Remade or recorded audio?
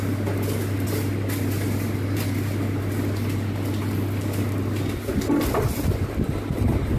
recorded